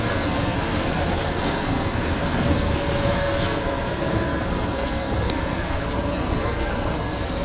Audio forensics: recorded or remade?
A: remade